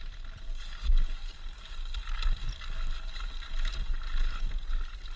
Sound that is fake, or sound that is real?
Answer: real